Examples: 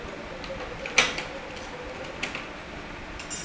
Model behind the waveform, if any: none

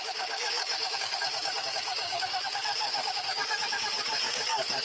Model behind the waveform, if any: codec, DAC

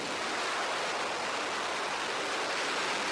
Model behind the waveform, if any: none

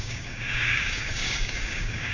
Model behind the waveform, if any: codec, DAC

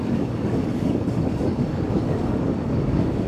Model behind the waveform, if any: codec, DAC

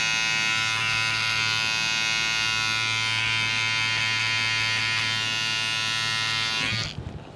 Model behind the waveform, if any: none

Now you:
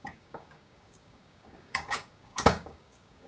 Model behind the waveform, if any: codec, DAC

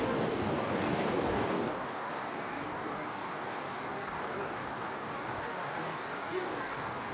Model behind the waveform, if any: codec, DAC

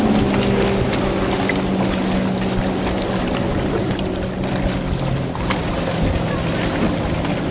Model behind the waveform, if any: none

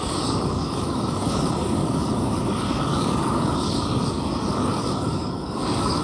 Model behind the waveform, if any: codec, DAC